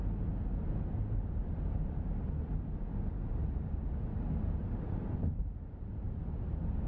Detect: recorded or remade recorded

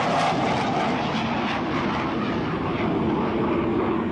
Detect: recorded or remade recorded